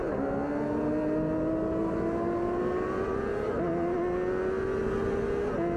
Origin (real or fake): real